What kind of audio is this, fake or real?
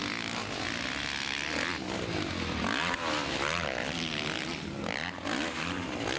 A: real